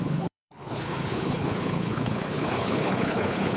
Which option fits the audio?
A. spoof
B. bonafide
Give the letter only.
A